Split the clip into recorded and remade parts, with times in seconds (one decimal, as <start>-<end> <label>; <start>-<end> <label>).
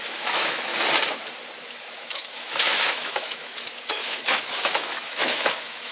0.0-0.7 remade; 0.7-1.6 recorded; 1.6-5.9 remade